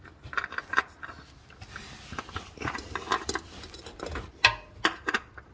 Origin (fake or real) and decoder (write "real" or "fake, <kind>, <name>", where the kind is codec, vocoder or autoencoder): real